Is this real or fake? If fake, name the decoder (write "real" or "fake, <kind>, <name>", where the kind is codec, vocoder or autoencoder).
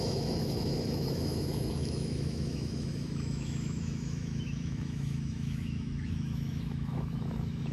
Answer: fake, autoencoder, DAC-VAE